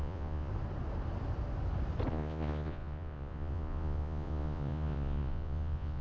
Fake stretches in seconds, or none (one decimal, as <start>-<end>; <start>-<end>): 0.0-0.5; 2.1-6.0